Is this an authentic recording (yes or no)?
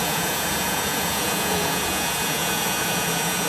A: no